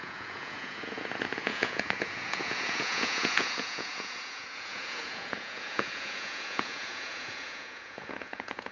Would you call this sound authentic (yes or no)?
no